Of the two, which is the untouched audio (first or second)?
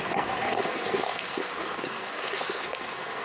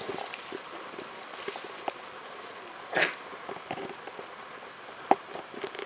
second